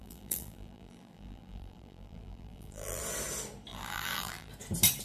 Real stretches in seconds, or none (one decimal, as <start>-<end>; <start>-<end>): 3.0-3.7; 4.5-5.0